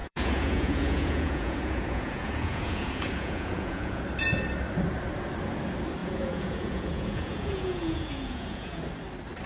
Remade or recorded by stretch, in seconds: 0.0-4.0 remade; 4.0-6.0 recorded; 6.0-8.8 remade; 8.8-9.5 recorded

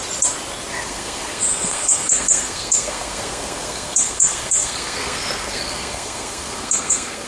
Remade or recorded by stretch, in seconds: 0.0-0.7 recorded; 0.7-7.3 remade

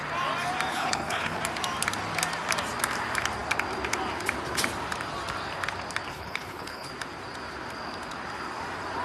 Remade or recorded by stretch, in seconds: 0.0-0.7 recorded; 0.7-1.4 remade; 1.4-6.1 recorded; 6.1-6.9 remade; 6.9-9.0 recorded

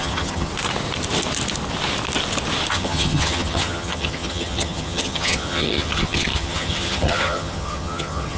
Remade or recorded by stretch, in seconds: 0.0-0.5 remade; 0.5-2.7 recorded; 2.7-8.4 remade

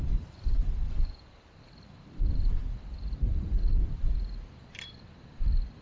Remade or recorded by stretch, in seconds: 0.0-0.6 recorded; 0.6-4.1 remade; 4.1-5.8 recorded

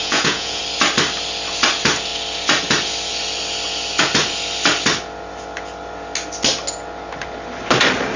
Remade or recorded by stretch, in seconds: 0.0-0.6 remade; 0.6-8.2 recorded

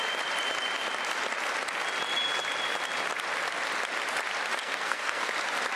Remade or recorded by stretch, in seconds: 0.0-4.6 recorded; 4.6-5.3 remade; 5.3-5.8 recorded

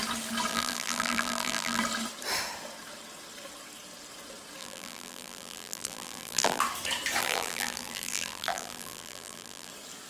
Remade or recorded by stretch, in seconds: 0.0-0.5 recorded; 0.5-1.8 remade; 1.8-4.6 recorded; 4.6-6.6 remade; 6.6-7.2 recorded; 7.2-9.7 remade; 9.7-10.1 recorded